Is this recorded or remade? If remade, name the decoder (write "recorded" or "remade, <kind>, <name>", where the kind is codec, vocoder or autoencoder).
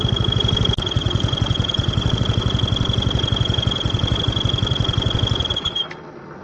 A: recorded